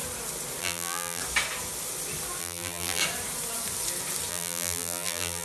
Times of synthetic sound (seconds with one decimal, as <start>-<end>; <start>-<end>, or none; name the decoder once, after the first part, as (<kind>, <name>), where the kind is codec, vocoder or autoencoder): 0.6-1.2 (vocoder, BigVGAN v2); 2.4-3.0; 4.3-5.4